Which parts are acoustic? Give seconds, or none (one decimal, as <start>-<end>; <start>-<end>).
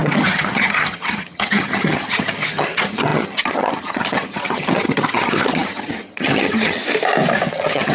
6.8-7.5